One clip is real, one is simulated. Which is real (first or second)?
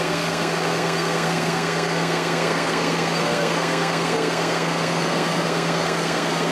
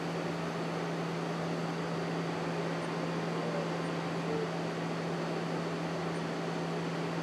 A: second